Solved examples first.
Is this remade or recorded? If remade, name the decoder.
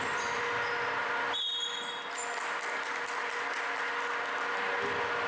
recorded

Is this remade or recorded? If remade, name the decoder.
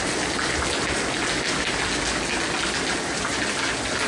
recorded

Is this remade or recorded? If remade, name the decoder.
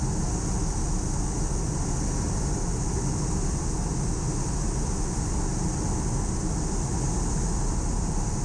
recorded